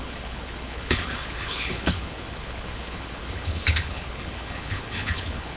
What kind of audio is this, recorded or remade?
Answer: remade